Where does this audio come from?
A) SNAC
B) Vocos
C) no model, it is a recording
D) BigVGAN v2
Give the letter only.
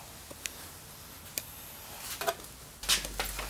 C